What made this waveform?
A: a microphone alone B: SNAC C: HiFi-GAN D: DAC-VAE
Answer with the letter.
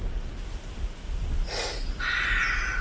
A